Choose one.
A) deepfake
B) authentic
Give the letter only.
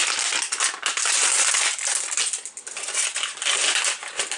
B